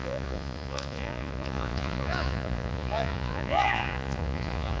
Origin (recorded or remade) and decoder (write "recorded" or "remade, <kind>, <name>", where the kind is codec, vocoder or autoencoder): remade, vocoder, Vocos